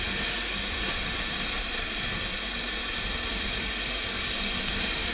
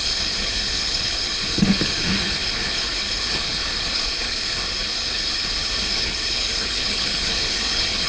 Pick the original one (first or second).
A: first